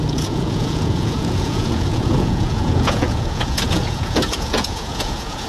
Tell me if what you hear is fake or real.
fake